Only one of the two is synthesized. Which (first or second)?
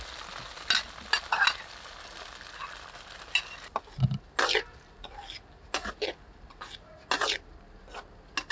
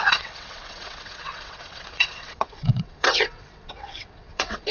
second